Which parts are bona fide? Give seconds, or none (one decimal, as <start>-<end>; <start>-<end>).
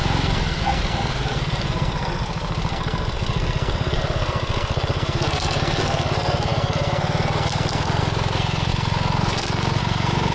none